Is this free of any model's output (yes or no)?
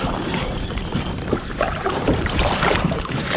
no